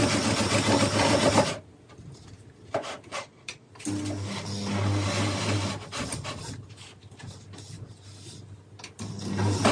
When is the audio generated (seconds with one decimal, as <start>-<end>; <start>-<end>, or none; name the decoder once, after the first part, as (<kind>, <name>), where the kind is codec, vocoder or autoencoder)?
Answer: 3.1-3.7 (vocoder, Vocos)